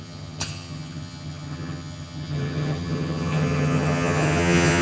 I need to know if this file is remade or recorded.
remade